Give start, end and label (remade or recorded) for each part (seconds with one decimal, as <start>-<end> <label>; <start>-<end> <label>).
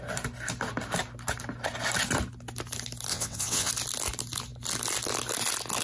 0.0-3.1 recorded; 3.1-3.7 remade; 3.7-5.8 recorded